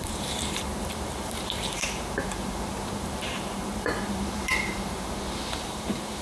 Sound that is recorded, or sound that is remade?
remade